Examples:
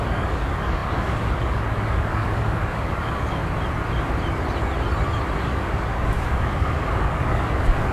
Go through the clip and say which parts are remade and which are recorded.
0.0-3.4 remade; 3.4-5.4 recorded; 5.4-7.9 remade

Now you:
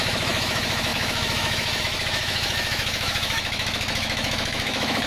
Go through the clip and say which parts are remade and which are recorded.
0.0-5.1 remade

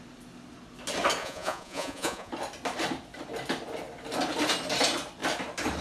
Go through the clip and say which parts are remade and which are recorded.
0.0-1.2 recorded; 1.2-2.3 remade; 2.3-5.8 recorded